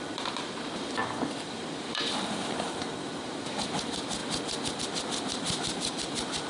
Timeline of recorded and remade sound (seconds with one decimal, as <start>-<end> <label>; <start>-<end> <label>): 0.0-4.2 remade; 4.2-4.8 recorded; 4.8-6.5 remade